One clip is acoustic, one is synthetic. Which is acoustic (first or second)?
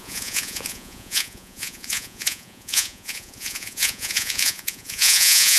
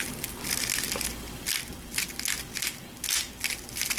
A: second